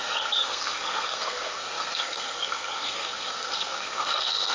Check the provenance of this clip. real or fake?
fake